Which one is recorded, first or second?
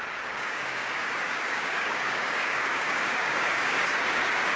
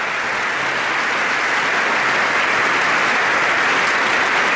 second